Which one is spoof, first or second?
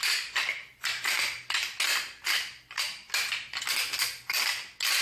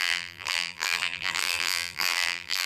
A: second